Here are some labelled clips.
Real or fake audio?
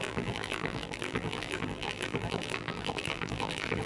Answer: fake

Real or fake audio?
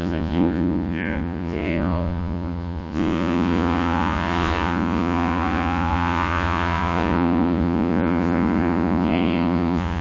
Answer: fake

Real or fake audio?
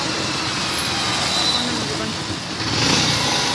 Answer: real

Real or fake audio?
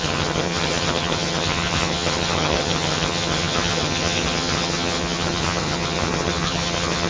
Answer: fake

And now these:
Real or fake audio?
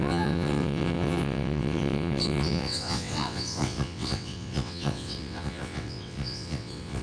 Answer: fake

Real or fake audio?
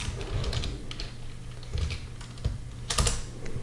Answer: real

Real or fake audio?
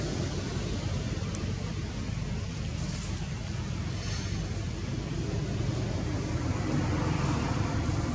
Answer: real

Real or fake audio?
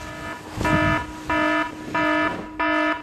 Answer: real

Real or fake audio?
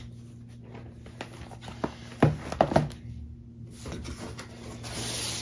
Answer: real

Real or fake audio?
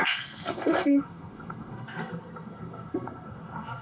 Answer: fake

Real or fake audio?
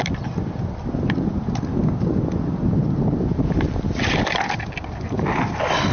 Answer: real